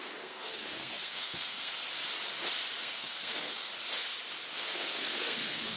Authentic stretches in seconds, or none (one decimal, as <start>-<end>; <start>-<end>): 1.8-2.8; 3.7-4.5